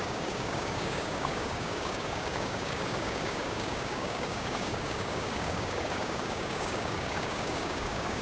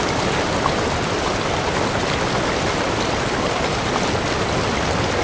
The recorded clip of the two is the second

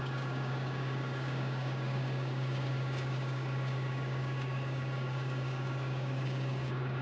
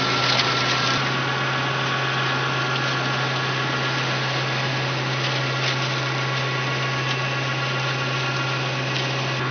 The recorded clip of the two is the second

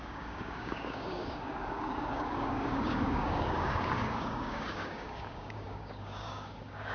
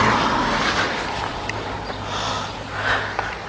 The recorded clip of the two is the second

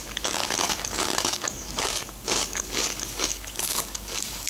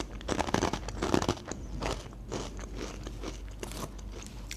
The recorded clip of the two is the second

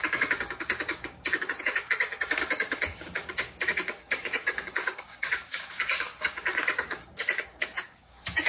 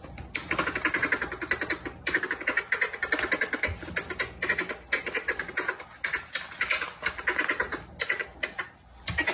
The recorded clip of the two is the second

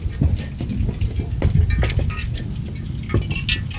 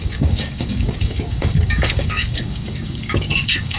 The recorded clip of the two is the first